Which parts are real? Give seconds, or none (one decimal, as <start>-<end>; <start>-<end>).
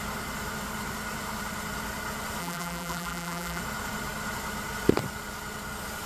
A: 0.0-2.4; 3.6-6.1